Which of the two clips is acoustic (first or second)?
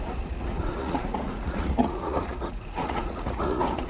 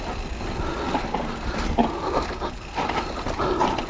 second